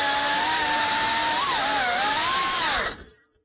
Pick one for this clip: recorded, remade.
recorded